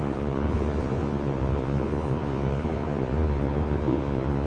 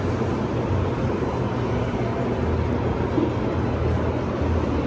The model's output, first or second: first